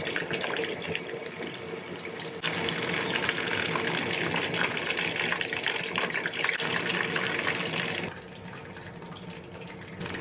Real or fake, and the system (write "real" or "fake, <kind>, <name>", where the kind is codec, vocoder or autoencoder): real